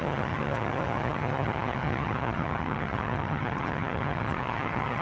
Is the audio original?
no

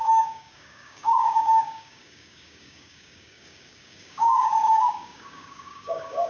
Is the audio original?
no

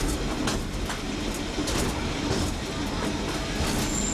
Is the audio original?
yes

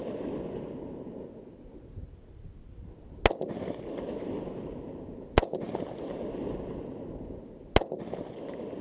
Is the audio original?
yes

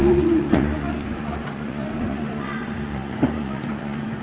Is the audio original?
no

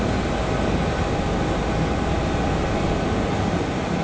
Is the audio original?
yes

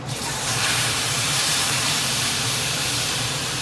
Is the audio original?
no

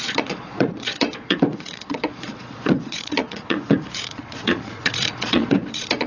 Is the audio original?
no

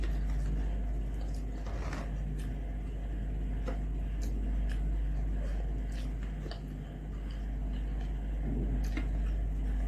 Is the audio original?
yes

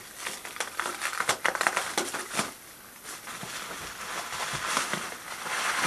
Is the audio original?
yes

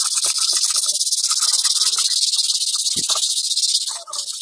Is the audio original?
yes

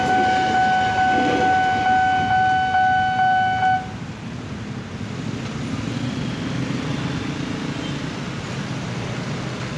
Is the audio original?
yes